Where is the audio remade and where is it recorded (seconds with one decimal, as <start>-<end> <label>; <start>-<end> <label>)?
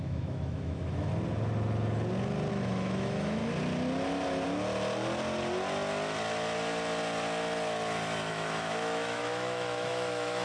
0.0-1.1 remade; 1.1-2.5 recorded; 2.5-3.4 remade; 3.4-8.3 recorded; 8.3-10.4 remade